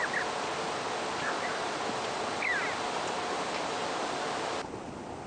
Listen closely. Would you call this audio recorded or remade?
recorded